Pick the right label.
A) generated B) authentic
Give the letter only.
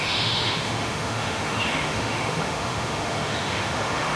A